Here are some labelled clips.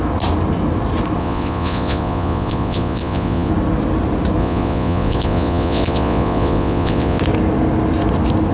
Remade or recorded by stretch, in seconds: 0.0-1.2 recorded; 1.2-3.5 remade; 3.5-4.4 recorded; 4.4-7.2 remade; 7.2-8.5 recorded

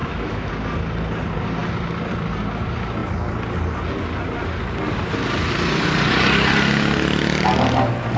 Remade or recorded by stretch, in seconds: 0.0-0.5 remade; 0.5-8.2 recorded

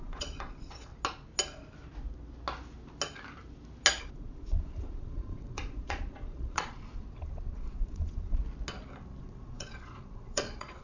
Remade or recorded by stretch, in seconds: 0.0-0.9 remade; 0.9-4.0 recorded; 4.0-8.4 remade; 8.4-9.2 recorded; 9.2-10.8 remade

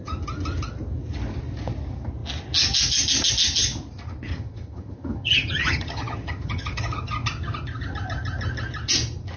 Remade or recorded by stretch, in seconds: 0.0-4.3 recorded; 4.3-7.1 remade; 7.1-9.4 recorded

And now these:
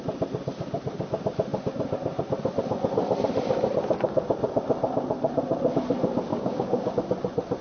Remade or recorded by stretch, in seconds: 0.0-6.3 recorded; 6.3-6.9 remade; 6.9-7.6 recorded

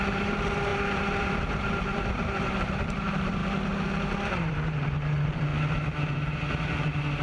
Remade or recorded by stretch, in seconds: 0.0-3.4 remade; 3.4-4.3 recorded; 4.3-5.5 remade; 5.5-6.0 recorded; 6.0-7.2 remade